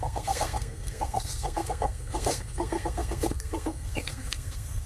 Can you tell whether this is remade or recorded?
remade